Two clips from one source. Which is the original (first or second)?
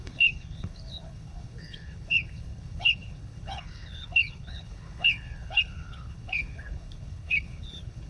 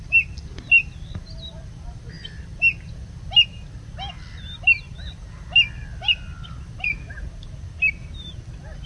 second